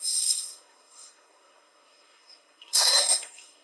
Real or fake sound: fake